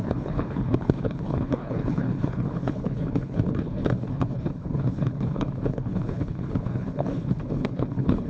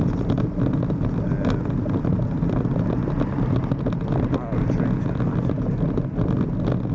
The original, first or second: second